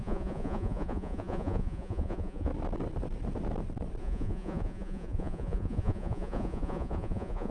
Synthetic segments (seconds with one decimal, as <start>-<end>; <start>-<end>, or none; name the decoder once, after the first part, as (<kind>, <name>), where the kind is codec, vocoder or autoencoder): 0.0-2.5 (vocoder, Vocos); 4.0-7.5